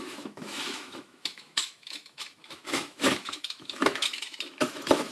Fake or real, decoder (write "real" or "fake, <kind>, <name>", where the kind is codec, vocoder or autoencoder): fake, autoencoder, DAC-VAE